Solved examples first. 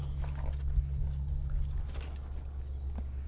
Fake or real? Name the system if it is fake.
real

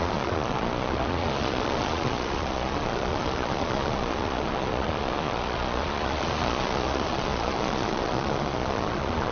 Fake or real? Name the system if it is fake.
fake, vocoder, Vocos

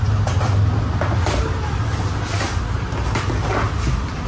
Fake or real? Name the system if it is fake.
real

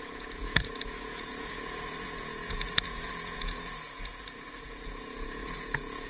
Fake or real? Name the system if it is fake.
fake, vocoder, Vocos